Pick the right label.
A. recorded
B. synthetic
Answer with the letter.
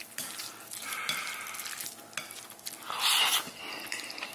A